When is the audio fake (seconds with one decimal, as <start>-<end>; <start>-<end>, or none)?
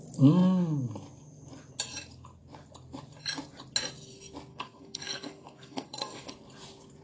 4.5-6.3